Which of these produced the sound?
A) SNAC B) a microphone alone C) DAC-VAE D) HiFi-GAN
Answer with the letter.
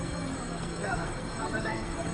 A